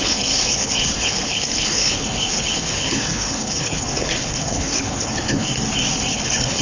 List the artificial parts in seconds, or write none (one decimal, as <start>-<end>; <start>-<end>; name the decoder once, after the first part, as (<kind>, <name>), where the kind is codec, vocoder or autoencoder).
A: 0.0-5.5 (codec, HILCodec); 6.1-6.6